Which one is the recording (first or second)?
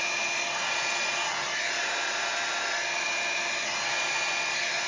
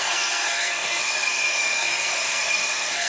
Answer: first